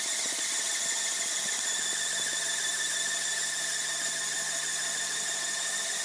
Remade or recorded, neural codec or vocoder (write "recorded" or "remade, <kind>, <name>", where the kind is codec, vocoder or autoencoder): recorded